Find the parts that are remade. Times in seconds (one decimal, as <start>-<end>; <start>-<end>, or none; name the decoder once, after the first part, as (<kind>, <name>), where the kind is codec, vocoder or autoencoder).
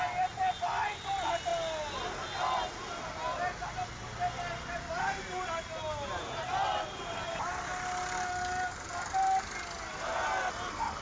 none